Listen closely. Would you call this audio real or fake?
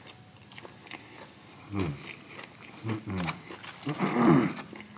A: real